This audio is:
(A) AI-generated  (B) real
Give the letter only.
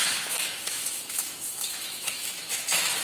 A